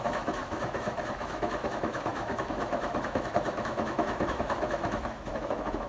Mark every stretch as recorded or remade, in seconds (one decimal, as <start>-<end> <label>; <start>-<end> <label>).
0.0-5.9 remade